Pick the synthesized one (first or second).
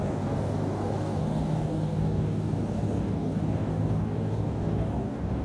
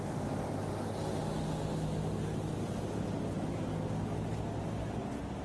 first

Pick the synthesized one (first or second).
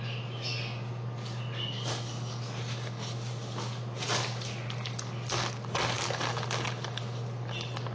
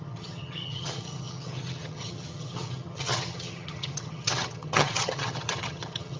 second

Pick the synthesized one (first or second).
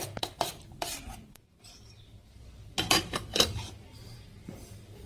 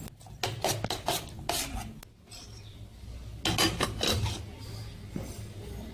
first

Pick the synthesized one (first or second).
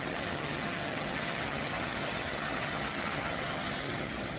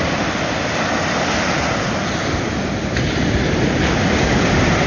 first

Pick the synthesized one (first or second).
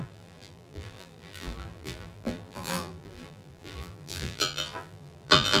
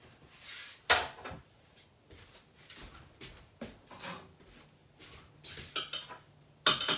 first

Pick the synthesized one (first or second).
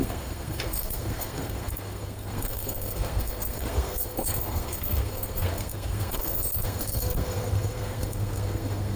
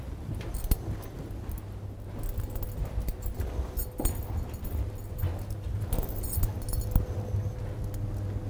first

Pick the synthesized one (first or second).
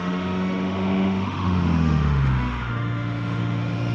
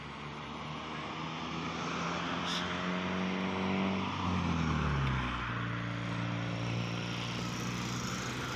first